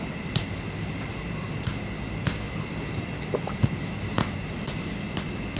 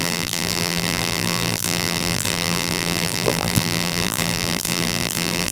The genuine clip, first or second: first